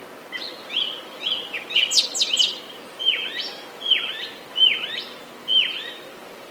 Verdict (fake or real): real